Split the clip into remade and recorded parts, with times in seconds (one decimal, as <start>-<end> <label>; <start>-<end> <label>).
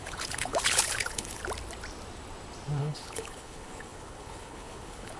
0.0-1.4 remade; 1.4-2.8 recorded; 2.8-5.2 remade